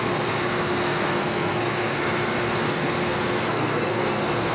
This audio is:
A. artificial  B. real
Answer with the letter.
A